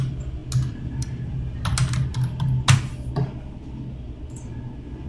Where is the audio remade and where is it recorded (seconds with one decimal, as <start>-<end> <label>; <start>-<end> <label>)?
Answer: 0.0-5.1 recorded